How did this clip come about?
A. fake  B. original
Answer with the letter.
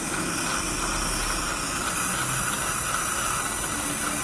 B